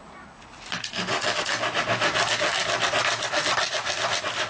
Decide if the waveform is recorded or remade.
recorded